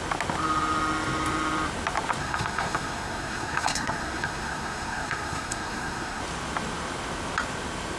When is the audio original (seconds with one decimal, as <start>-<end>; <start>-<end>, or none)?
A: 0.0-2.2; 6.2-8.0